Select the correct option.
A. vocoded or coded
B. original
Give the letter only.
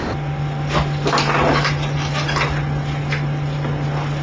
B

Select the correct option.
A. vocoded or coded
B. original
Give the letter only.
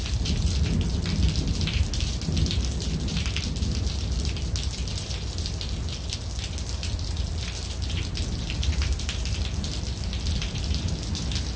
B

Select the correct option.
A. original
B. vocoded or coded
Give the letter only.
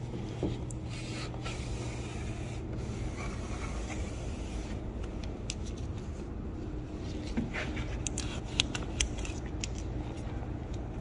A